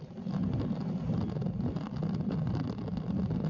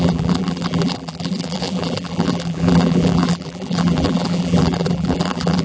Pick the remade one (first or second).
second